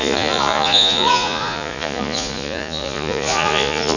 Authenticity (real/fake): fake